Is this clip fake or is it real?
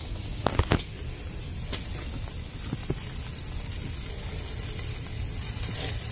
real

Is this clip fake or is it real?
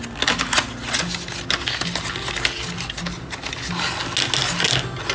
real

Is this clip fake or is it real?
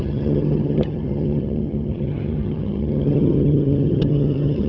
fake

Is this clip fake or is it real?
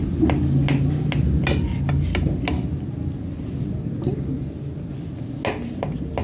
real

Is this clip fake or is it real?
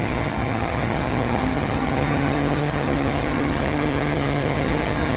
fake